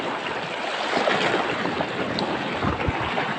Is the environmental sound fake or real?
real